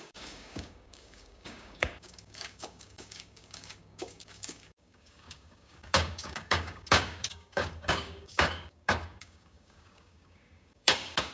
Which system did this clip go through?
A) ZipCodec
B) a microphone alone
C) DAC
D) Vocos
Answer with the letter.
C